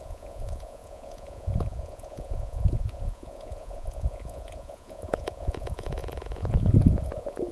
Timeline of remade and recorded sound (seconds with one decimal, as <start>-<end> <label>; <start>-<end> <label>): 0.0-7.5 remade